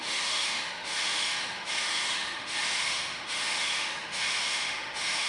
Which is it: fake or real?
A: fake